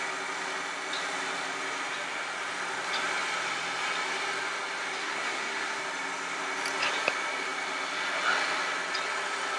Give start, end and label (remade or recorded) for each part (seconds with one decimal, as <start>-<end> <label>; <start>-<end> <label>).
0.0-5.0 recorded; 5.0-5.8 remade; 5.8-9.6 recorded